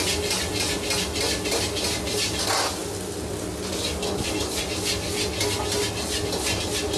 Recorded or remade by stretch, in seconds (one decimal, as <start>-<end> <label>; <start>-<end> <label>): 0.0-7.0 recorded